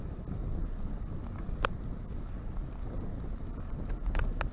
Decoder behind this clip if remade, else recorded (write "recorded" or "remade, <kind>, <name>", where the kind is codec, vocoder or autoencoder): recorded